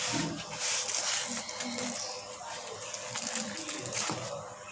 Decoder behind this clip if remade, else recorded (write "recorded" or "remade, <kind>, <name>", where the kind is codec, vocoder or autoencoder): recorded